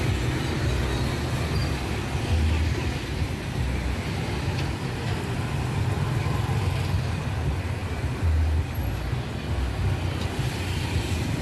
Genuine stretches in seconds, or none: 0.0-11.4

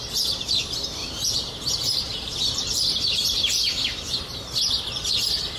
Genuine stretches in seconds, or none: 0.0-1.0; 4.2-5.6

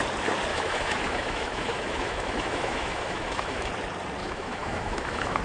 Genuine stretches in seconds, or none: 0.0-0.5; 3.7-4.2

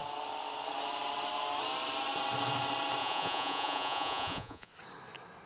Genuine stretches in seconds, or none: 0.0-3.0; 4.7-5.5